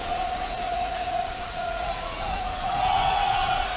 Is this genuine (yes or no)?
no